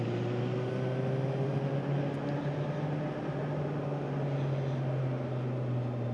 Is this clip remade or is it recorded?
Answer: recorded